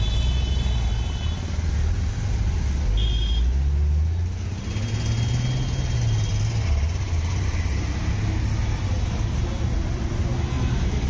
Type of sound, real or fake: real